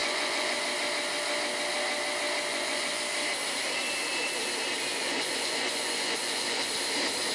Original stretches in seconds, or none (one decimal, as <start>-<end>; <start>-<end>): 0.6-2.5; 3.0-4.9; 6.7-7.3